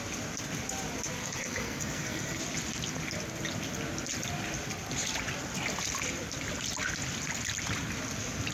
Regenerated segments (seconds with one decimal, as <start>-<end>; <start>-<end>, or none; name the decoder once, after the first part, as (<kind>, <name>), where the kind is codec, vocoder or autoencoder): 1.2-2.4 (codec, SNAC)